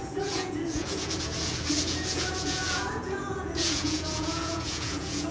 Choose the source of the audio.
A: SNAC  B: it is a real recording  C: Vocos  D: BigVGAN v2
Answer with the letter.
C